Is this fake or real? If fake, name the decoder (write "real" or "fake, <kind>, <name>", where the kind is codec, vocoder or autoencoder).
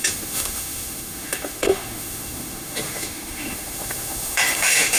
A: fake, autoencoder, DAC-VAE